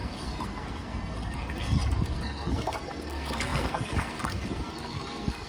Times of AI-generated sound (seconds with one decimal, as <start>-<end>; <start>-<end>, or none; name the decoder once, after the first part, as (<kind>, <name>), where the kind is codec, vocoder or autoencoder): 0.0-5.5 (codec, SNAC)